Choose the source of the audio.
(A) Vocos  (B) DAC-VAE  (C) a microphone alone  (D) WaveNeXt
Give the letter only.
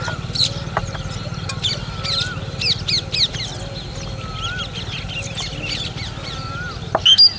C